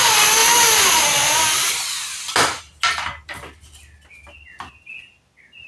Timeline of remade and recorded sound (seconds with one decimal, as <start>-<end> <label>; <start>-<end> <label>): 0.0-5.7 recorded